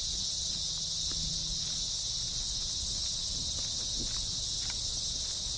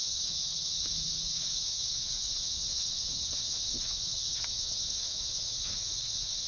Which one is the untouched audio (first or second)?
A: first